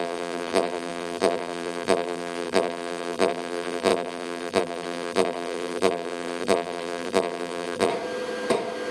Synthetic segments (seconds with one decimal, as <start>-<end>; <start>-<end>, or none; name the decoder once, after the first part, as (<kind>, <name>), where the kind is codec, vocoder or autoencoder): 0.0-7.9 (vocoder, BigVGAN v2)